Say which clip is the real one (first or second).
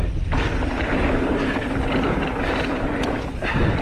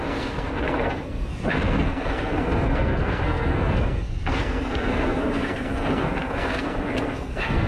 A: first